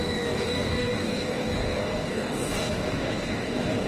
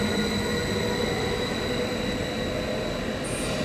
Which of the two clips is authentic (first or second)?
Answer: second